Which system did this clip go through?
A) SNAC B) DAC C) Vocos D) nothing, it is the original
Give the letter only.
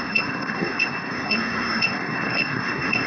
A